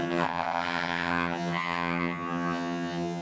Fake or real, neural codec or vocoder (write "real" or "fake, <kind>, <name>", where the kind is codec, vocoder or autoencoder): fake, vocoder, HiFi-GAN